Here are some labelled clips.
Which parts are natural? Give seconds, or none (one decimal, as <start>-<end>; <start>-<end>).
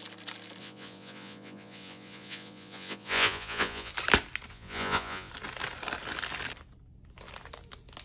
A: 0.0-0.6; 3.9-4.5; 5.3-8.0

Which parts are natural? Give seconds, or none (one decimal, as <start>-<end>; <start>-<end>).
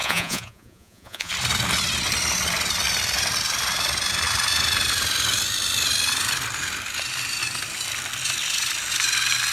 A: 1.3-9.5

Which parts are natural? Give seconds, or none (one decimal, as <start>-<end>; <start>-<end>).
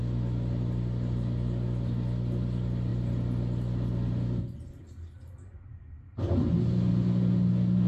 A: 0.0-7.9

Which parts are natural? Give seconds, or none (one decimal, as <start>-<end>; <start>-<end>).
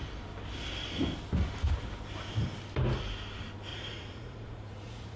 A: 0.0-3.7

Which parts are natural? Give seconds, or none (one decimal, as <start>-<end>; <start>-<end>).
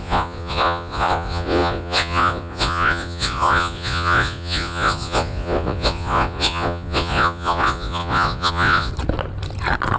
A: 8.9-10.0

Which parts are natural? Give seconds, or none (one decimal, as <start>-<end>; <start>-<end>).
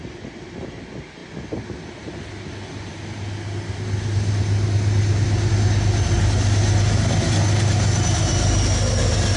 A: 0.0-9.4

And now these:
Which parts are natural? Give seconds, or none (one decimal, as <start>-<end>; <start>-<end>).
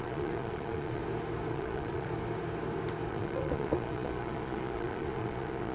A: 1.0-1.5; 2.1-3.1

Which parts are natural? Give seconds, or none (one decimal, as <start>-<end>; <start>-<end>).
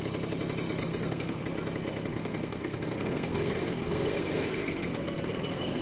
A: 0.0-0.8; 1.4-2.1